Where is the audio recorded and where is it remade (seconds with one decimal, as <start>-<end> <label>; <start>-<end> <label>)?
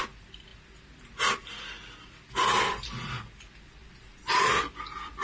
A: 0.0-5.2 recorded